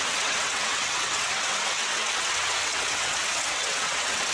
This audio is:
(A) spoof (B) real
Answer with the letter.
A